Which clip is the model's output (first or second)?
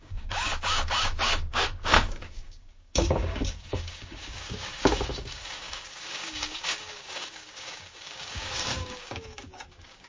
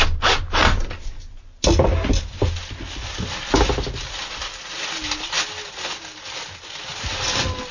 first